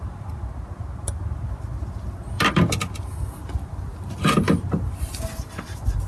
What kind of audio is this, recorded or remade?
recorded